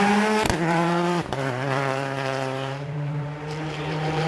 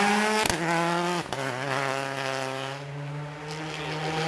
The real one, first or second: second